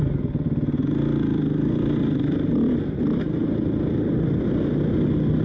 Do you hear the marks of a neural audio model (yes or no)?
no